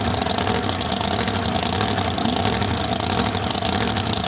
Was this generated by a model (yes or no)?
no